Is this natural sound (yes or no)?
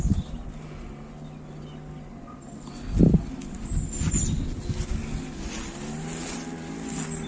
yes